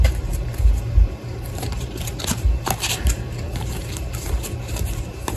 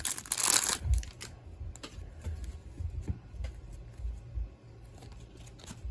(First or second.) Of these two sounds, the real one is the second